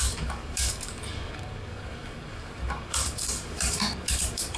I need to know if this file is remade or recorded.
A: remade